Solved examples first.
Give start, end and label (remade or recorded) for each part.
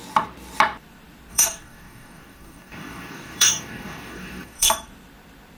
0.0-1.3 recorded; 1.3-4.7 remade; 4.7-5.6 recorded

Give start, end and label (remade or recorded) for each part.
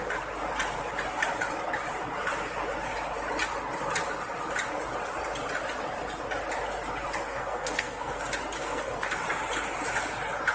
0.0-7.3 recorded; 7.3-8.2 remade; 8.2-8.6 recorded; 8.6-9.2 remade; 9.2-10.5 recorded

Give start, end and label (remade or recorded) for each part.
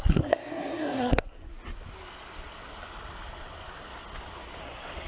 0.0-1.5 remade; 1.5-4.6 recorded; 4.6-5.1 remade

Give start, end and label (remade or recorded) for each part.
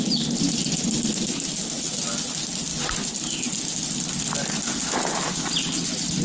0.0-6.2 recorded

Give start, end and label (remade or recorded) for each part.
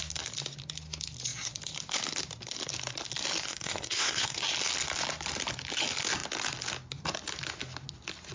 0.0-3.5 recorded; 3.5-4.4 remade; 4.4-8.3 recorded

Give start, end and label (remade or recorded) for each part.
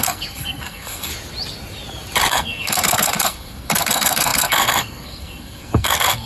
0.0-1.1 remade; 1.1-2.3 recorded; 2.3-6.3 remade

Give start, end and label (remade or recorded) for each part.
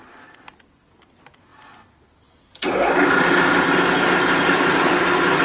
0.0-5.4 recorded